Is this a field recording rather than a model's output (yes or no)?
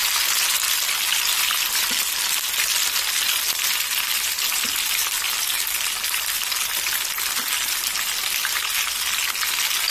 yes